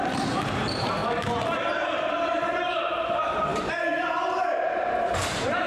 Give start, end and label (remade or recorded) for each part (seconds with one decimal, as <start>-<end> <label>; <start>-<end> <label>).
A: 0.0-1.0 remade; 1.0-1.6 recorded; 1.6-5.7 remade